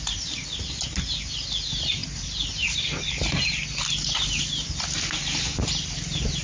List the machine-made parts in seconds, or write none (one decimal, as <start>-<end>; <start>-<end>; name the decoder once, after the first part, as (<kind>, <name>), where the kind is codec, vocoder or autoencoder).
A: none